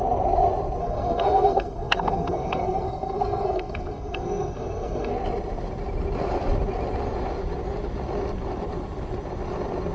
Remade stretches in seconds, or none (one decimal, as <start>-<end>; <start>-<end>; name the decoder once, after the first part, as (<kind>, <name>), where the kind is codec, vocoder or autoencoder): 0.8-5.1 (codec, SNAC)